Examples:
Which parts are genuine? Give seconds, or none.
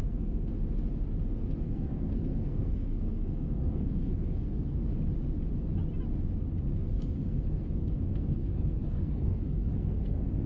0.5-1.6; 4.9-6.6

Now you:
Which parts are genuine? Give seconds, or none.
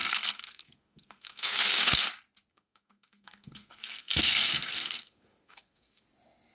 2.1-2.5; 6.0-6.5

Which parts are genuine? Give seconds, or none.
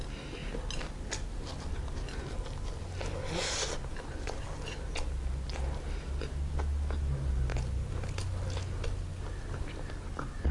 0.0-10.5